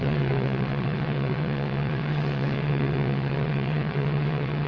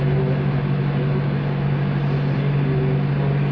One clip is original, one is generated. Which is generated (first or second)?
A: first